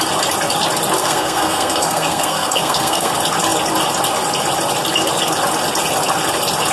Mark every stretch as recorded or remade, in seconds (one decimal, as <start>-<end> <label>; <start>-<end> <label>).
0.0-1.0 recorded; 1.0-3.1 remade; 3.1-6.7 recorded